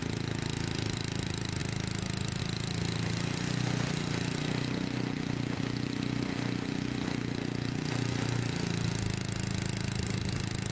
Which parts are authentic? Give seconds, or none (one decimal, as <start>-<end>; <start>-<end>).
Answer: 0.0-10.7